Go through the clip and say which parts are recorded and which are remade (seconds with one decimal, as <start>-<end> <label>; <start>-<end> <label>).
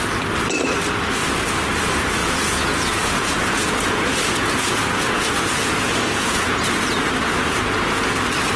0.0-2.2 recorded; 2.2-6.6 remade; 6.6-7.3 recorded; 7.3-8.2 remade; 8.2-8.6 recorded